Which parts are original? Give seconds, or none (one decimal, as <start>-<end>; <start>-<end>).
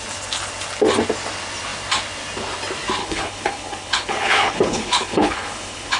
0.0-3.0